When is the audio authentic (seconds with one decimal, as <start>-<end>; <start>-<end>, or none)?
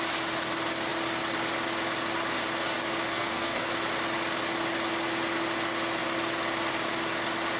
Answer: 0.0-3.1; 3.7-7.6